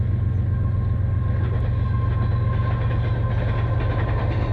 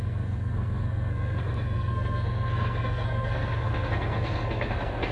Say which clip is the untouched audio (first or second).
first